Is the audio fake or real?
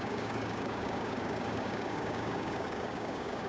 fake